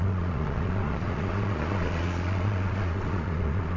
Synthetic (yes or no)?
yes